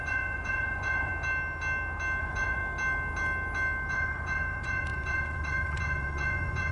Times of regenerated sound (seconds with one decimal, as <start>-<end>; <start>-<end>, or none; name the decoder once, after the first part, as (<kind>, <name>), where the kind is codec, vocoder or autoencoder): 0.0-1.1 (vocoder, Vocos); 2.2-2.6; 3.9-6.7